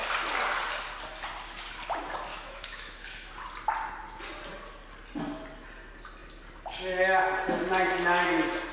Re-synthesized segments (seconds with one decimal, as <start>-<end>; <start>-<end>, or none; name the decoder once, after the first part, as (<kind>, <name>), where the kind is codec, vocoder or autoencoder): 2.3-3.3 (autoencoder, DAC-VAE)